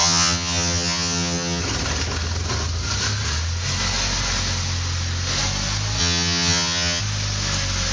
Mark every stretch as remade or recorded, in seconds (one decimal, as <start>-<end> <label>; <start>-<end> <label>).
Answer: 0.0-1.6 remade; 1.6-6.0 recorded; 6.0-7.0 remade; 7.0-7.9 recorded